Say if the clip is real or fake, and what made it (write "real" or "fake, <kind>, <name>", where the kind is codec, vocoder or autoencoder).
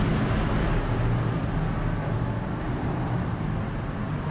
real